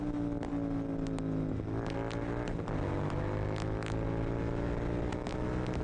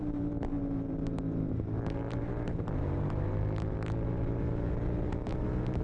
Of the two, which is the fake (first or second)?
second